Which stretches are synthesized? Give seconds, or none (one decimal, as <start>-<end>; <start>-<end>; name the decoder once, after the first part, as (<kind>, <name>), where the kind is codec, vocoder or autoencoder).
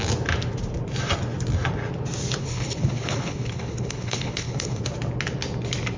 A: 2.4-4.8 (codec, HILCodec)